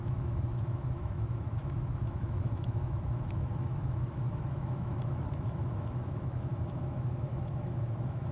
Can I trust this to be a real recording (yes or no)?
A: no